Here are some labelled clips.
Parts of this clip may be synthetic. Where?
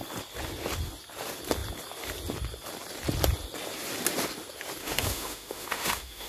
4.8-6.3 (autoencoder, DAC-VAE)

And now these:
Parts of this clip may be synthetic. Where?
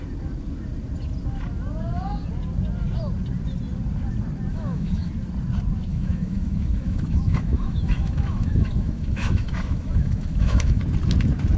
4.5-5.1 (autoencoder, DAC-VAE); 5.9-10.8